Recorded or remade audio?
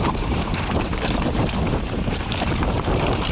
remade